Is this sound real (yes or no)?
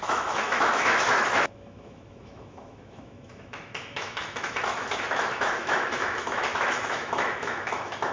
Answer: no